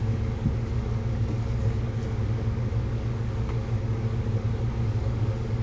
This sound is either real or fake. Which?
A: fake